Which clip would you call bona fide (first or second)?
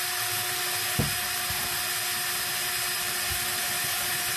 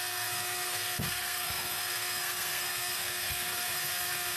first